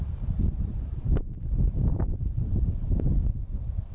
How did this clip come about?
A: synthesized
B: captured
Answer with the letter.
A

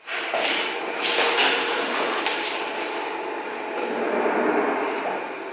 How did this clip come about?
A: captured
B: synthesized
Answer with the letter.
A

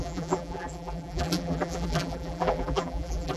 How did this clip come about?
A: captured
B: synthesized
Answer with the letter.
B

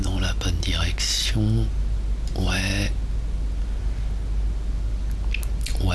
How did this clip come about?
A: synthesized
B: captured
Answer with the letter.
B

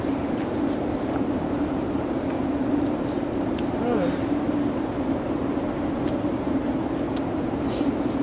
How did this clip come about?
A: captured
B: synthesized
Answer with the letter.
B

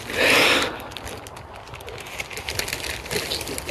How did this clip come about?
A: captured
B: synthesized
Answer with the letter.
A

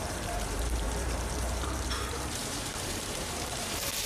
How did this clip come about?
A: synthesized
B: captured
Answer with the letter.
A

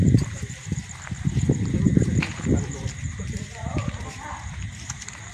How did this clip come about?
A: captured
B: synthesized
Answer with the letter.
B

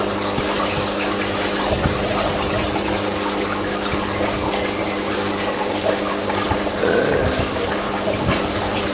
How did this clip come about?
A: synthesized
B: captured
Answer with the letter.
A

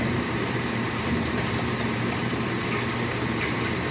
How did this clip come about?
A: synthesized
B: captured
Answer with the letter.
A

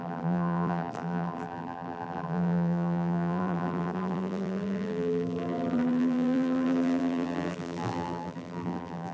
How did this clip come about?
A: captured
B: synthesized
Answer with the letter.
B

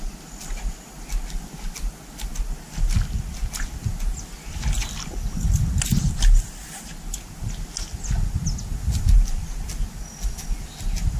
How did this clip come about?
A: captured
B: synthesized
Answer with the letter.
A